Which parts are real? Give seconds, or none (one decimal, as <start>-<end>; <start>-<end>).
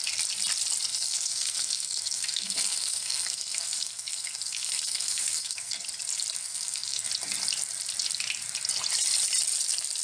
0.0-0.9; 5.8-6.4; 7.1-10.0